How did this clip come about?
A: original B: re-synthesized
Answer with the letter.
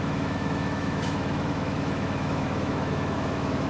B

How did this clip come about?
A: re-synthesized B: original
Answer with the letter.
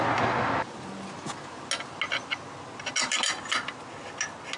B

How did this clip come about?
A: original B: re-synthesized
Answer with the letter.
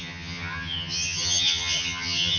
B